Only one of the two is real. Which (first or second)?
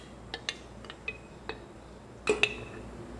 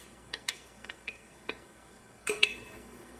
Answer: first